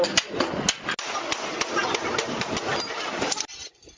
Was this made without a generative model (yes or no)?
yes